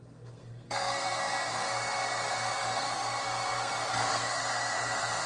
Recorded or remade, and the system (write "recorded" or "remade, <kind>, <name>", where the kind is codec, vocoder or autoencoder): remade, codec, SNAC